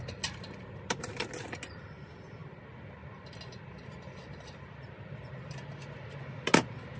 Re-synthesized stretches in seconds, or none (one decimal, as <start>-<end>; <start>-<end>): none